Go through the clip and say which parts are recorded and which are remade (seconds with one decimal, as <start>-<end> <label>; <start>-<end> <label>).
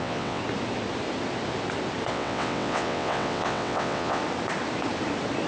0.0-0.4 remade; 0.4-2.1 recorded; 2.1-4.2 remade; 4.2-5.5 recorded